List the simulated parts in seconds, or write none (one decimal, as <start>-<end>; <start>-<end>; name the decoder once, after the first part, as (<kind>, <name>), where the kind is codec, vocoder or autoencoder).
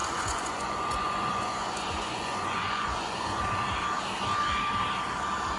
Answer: 0.0-3.4 (vocoder, Vocos)